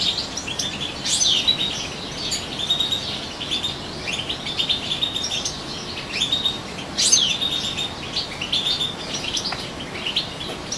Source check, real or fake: real